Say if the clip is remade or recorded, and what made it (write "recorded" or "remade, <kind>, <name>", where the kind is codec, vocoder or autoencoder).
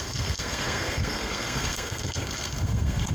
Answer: remade, codec, SNAC